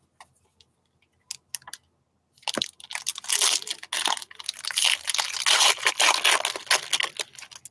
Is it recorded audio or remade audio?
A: recorded